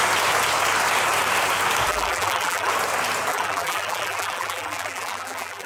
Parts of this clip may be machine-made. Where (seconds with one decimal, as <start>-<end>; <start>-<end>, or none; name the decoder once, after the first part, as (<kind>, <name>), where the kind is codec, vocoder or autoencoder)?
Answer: 1.9-2.7 (vocoder, BigVGAN v2); 3.3-5.7

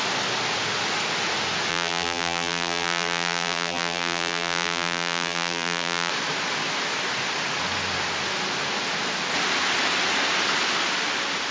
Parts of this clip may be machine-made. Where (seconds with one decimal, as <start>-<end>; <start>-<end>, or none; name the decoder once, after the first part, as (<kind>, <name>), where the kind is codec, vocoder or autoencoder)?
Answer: 1.7-6.1 (vocoder, BigVGAN v2)